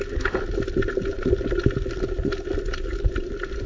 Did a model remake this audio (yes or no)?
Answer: no